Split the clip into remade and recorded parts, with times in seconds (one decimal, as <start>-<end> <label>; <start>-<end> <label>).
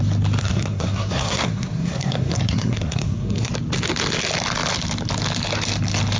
0.0-0.4 recorded; 0.4-3.5 remade; 3.5-6.2 recorded